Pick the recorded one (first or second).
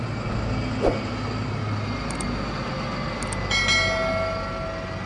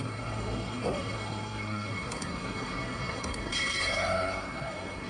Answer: first